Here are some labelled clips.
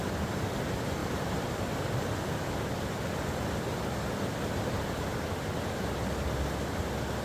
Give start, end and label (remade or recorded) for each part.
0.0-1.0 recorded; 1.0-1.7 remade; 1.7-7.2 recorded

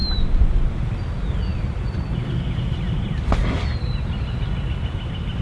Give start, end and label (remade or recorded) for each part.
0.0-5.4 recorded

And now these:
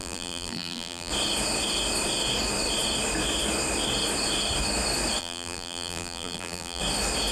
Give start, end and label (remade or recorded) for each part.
0.0-1.1 remade; 1.1-5.2 recorded; 5.2-6.8 remade; 6.8-7.3 recorded

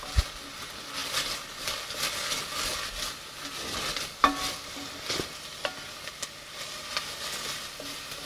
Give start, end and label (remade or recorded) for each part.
0.0-8.3 recorded

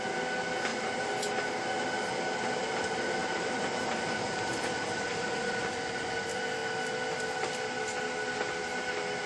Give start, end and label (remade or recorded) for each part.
0.0-0.7 recorded; 0.7-1.3 remade; 1.3-3.2 recorded; 3.2-5.6 remade; 5.6-9.3 recorded

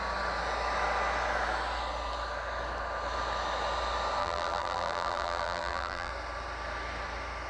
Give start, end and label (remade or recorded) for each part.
0.0-4.2 recorded; 4.2-6.1 remade; 6.1-7.5 recorded